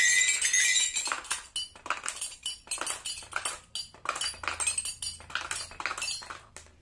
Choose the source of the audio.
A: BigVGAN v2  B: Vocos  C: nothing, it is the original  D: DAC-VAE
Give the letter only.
C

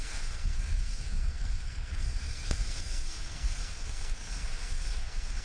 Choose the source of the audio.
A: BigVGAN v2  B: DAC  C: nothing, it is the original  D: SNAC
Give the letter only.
D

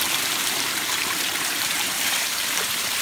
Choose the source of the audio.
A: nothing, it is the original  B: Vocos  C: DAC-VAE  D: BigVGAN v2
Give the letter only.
D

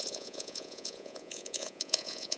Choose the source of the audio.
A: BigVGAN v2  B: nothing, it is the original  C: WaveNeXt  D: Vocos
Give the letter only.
D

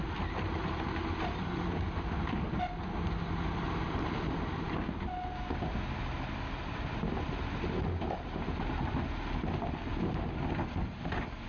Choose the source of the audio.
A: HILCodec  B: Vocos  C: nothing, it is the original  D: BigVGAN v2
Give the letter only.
C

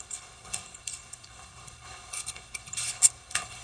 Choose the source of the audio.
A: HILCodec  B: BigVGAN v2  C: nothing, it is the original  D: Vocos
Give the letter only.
A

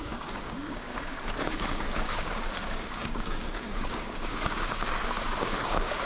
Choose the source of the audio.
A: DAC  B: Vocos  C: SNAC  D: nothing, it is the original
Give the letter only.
A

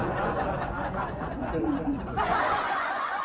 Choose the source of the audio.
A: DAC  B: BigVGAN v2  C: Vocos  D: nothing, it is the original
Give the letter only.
C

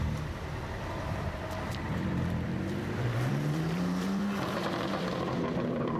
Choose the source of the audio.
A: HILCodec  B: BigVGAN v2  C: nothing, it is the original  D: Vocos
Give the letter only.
B